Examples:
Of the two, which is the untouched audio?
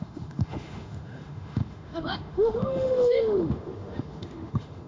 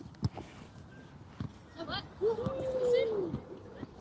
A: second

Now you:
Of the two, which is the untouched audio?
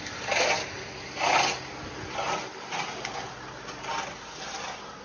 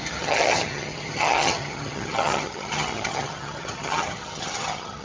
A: first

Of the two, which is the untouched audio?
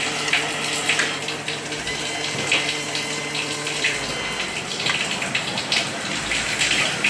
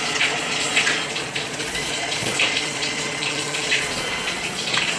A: first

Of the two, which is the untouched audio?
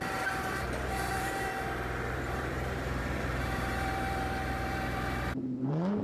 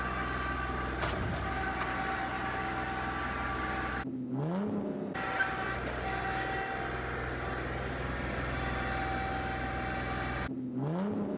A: second